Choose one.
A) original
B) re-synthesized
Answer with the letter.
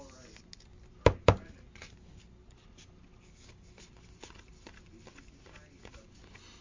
A